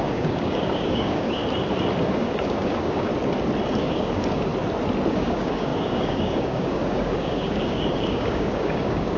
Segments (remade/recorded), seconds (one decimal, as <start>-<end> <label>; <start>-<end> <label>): 0.0-1.4 remade; 1.4-2.0 recorded; 2.0-3.1 remade; 3.1-3.8 recorded; 3.8-4.5 remade; 4.5-5.1 recorded; 5.1-9.2 remade